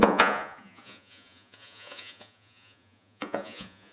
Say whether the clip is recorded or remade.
remade